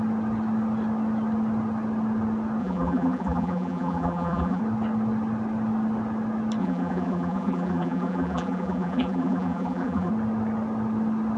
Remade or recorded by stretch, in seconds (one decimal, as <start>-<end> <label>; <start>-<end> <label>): 0.0-2.6 recorded; 2.6-4.6 remade; 4.6-6.6 recorded; 6.6-10.1 remade; 10.1-11.4 recorded